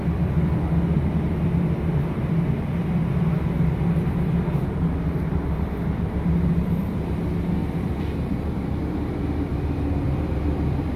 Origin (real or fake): fake